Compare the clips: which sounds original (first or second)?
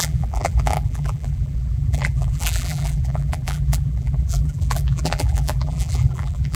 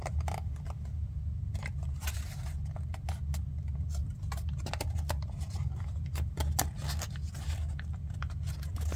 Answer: second